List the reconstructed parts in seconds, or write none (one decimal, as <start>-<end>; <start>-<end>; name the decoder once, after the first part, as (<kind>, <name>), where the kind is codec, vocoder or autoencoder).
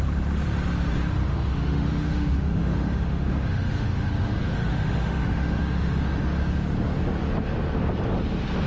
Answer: 1.2-6.0 (autoencoder, DAC-VAE)